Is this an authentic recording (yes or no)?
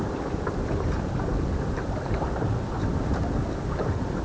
yes